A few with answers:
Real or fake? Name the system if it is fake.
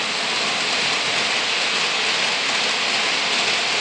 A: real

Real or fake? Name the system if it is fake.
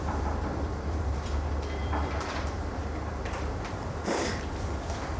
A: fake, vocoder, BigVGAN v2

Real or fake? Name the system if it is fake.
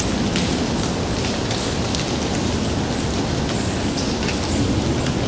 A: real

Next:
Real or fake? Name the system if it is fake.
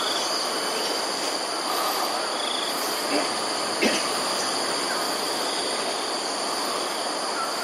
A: fake, vocoder, BigVGAN v2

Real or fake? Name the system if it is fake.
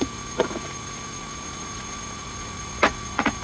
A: fake, vocoder, Vocos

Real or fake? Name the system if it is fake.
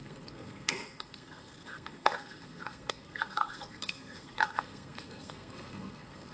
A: fake, codec, SNAC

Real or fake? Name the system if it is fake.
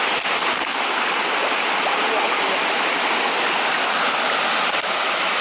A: real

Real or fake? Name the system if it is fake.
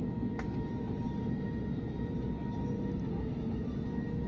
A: real